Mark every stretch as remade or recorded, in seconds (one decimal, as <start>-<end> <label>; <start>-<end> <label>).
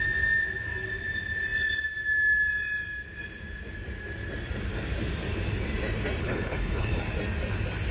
0.0-6.2 recorded; 6.2-7.0 remade; 7.0-7.9 recorded